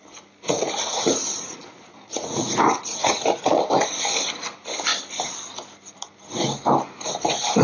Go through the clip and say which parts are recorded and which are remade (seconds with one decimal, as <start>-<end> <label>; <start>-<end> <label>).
0.0-0.4 recorded; 0.4-3.6 remade; 3.6-7.6 recorded